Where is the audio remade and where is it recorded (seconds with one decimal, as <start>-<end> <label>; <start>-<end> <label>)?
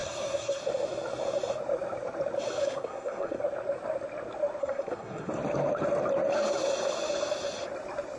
0.0-0.6 remade; 0.6-2.6 recorded; 2.6-3.4 remade; 3.4-4.6 recorded; 4.6-5.3 remade; 5.3-8.2 recorded